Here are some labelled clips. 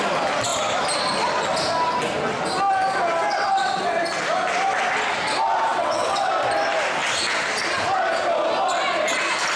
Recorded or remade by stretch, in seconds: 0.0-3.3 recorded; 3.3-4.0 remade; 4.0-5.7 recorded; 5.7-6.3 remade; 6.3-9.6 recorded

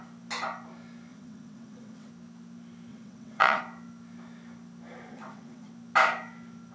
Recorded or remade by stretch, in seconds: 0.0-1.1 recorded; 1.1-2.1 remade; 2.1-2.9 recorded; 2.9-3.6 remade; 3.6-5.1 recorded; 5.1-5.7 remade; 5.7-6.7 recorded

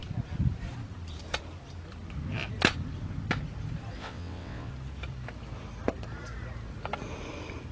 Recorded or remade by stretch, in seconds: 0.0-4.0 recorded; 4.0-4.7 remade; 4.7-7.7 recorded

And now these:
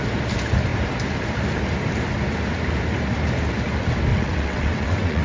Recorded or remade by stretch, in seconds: 0.0-4.1 recorded; 4.1-5.2 remade